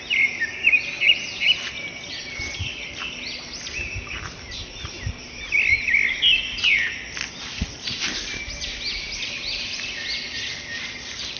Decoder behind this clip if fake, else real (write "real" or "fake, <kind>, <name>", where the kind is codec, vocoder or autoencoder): real